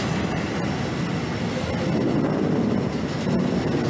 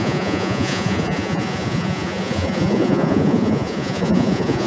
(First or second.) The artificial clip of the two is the second